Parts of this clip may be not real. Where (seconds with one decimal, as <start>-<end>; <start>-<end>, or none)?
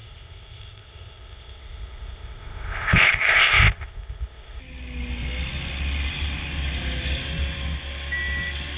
0.0-4.6